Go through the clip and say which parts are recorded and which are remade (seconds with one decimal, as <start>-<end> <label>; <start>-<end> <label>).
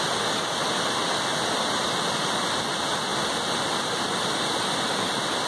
0.0-5.5 recorded